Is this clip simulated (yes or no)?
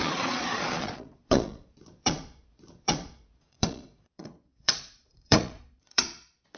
yes